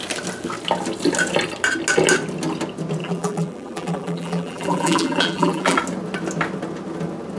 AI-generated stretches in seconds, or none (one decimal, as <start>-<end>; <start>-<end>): 3.0-5.8